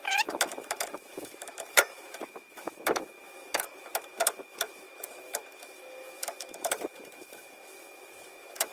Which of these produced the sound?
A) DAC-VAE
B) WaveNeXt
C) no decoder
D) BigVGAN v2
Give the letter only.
A